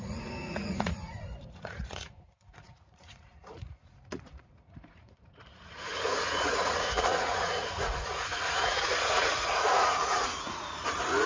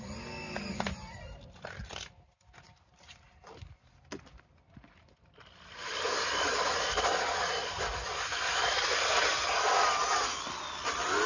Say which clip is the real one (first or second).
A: second